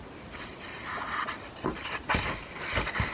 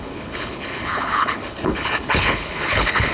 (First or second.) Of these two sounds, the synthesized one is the second